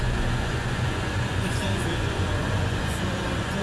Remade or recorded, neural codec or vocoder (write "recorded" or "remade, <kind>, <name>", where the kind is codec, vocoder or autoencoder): remade, vocoder, Vocos